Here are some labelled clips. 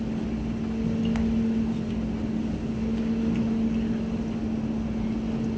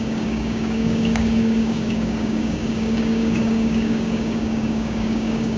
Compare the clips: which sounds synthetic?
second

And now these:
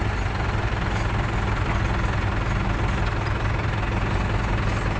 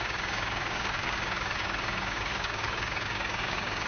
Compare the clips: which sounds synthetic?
second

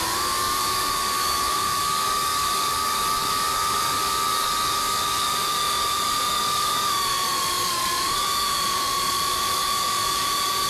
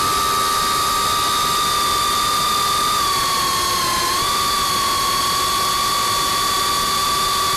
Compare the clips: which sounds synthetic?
first